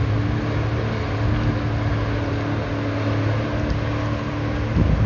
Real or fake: real